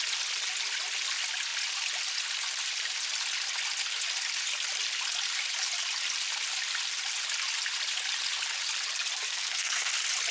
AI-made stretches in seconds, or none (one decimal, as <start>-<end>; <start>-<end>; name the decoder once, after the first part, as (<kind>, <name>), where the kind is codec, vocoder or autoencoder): 9.3-9.9 (codec, SNAC)